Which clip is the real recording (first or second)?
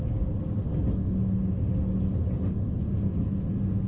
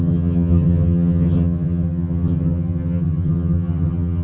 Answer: first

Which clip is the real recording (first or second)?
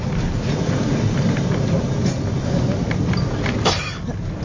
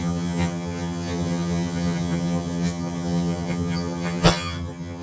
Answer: first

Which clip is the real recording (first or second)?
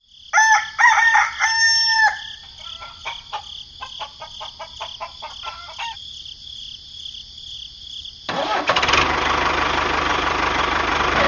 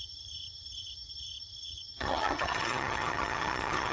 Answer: first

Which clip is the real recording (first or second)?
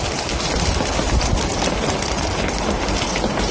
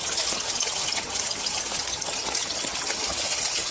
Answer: first